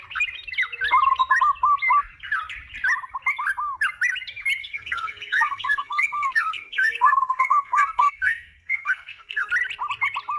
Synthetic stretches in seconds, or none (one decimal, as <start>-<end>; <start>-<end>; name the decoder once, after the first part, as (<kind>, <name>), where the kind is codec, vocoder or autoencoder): 4.6-9.5 (codec, SNAC)